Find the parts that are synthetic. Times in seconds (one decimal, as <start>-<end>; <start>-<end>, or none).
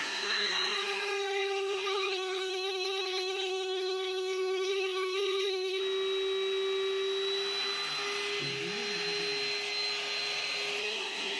0.0-5.8; 10.8-11.4